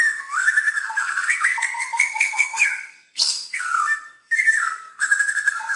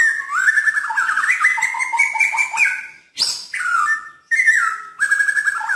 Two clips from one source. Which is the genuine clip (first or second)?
second